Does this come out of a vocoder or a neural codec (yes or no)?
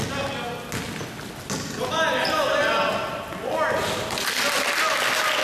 no